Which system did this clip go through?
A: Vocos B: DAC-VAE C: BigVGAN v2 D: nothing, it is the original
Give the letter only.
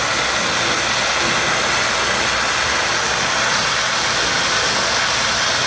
D